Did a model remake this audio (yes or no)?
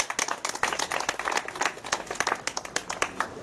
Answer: no